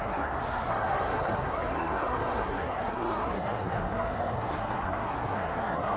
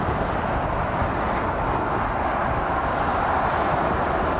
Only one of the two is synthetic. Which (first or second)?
first